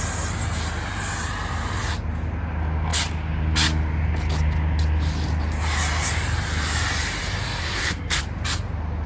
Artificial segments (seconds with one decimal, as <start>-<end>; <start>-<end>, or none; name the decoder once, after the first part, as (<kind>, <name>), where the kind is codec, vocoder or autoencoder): 7.6-8.2 (codec, SNAC)